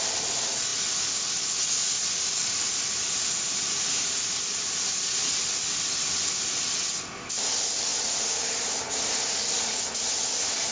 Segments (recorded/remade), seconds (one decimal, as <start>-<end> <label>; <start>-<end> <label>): 0.0-2.4 recorded; 2.4-5.3 remade; 5.3-7.9 recorded; 7.9-8.6 remade; 8.6-10.7 recorded